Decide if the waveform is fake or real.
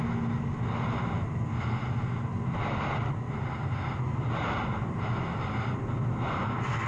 real